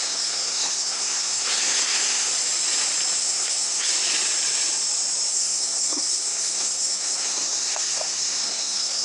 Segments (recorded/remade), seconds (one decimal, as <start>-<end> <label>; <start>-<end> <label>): 0.0-2.3 remade; 2.3-3.2 recorded; 3.2-3.9 remade; 3.9-5.3 recorded; 5.3-9.0 remade